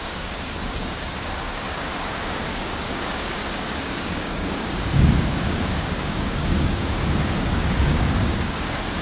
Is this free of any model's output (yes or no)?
no